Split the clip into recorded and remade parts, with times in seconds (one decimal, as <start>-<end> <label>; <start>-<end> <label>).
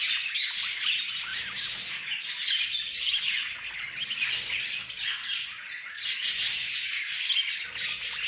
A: 0.0-8.3 recorded